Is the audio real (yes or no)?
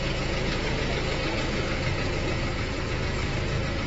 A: no